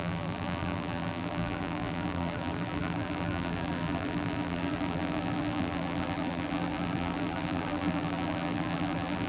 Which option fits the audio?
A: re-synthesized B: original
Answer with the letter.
A